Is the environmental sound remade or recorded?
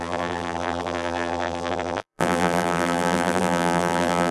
remade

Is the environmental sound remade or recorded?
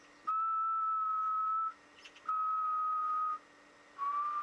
recorded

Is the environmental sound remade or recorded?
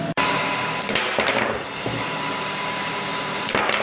remade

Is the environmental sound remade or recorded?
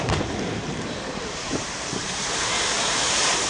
remade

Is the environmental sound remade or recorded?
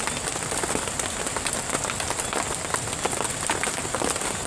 recorded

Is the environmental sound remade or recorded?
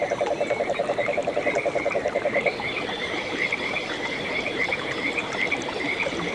remade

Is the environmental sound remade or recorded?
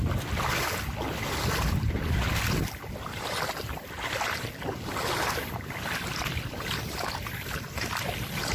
recorded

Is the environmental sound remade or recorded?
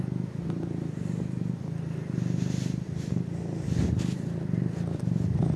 recorded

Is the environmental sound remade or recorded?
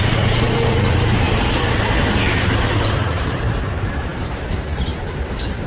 remade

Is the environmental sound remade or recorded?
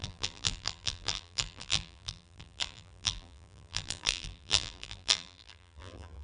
remade